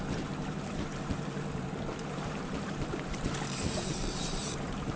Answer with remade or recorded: remade